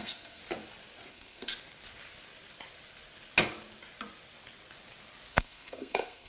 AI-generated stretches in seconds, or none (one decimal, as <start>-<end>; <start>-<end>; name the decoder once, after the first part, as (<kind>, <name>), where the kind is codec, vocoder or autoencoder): 0.0-0.4 (codec, SNAC); 1.1-1.5; 5.3-6.3